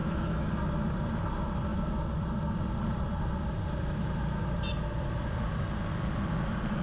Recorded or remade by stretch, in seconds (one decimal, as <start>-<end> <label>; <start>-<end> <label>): 0.0-0.5 remade; 0.5-6.8 recorded